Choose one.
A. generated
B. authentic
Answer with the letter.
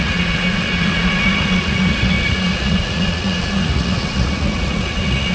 A